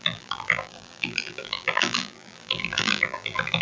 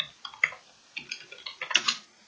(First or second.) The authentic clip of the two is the second